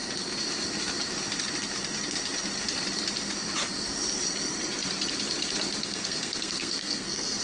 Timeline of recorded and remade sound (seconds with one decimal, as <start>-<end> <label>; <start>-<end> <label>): 0.0-5.8 recorded; 5.8-7.4 remade